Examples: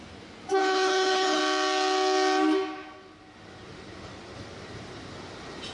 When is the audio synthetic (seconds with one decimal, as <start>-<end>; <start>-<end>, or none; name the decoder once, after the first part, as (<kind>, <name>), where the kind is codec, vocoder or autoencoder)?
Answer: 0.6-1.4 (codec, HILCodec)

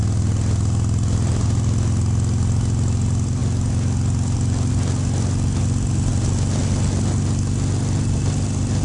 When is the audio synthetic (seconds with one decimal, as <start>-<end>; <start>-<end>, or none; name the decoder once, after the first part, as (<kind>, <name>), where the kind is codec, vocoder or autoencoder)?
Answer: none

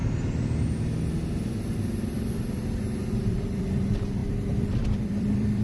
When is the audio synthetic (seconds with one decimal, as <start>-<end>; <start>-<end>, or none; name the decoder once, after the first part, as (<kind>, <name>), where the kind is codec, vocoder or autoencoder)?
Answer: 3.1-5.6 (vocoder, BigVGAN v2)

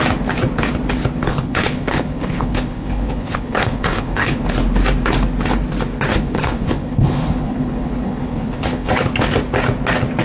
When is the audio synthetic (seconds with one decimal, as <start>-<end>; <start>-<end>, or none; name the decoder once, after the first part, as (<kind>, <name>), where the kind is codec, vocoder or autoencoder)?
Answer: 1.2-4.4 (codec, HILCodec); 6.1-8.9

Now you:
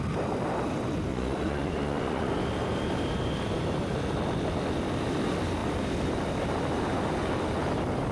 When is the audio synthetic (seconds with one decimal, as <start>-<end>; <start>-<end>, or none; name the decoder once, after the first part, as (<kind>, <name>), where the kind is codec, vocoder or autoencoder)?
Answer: 1.1-2.3 (vocoder, Vocos)

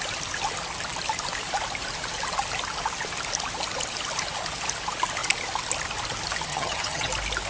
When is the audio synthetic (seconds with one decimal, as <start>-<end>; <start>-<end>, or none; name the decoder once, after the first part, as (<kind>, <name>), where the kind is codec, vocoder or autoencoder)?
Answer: 6.5-7.1 (vocoder, HiFi-GAN)

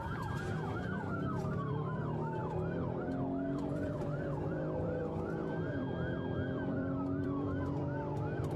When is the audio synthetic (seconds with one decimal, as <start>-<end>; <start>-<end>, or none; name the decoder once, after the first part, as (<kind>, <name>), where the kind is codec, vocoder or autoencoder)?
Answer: 0.0-8.6 (vocoder, BigVGAN v2)

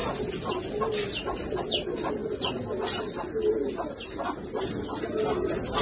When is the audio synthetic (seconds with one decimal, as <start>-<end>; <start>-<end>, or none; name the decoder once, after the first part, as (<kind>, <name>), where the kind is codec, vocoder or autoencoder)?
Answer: none